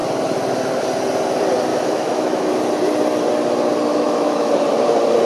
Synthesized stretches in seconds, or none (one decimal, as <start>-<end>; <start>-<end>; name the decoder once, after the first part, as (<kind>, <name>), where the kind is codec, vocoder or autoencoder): 1.7-2.5 (autoencoder, DAC-VAE); 3.9-4.5